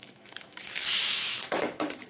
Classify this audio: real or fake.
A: fake